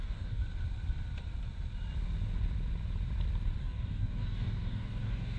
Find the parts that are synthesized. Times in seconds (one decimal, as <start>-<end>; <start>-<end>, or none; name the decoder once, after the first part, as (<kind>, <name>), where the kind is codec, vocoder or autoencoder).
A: 0.0-0.4 (codec, DAC); 3.6-5.4